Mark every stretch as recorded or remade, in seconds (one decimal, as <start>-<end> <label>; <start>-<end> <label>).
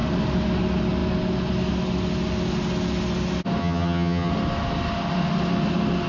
0.0-3.6 recorded; 3.6-4.3 remade; 4.3-6.1 recorded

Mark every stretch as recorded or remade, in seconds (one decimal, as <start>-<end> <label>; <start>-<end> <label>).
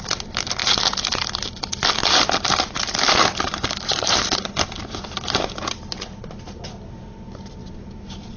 0.0-8.4 recorded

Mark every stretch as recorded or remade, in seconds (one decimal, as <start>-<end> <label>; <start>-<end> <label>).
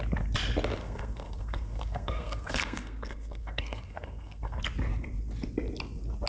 0.0-0.8 recorded; 0.8-4.6 remade; 4.6-6.3 recorded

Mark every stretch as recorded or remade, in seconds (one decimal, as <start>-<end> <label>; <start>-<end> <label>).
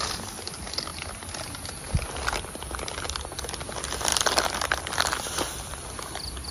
0.0-6.5 recorded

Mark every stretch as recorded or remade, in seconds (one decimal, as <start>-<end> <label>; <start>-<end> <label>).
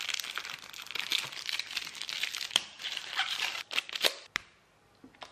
0.0-5.3 recorded